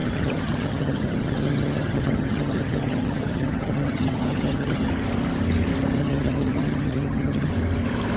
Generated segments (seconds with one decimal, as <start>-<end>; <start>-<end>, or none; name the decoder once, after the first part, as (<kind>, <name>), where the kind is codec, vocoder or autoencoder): 0.0-4.9 (vocoder, HiFi-GAN); 6.0-7.5